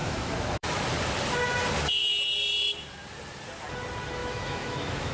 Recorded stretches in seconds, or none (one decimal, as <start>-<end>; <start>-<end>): 0.8-4.2